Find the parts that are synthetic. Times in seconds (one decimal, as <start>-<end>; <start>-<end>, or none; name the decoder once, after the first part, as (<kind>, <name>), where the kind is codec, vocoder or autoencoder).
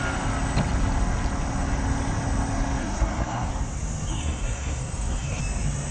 2.8-3.5 (codec, SNAC); 4.1-5.4